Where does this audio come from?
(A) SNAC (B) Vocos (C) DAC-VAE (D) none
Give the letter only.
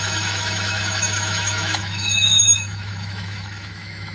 C